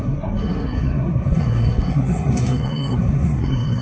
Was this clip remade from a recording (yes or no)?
yes